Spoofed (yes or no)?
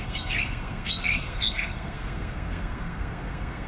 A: yes